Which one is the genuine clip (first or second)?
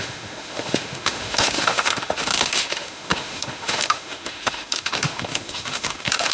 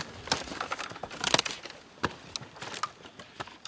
second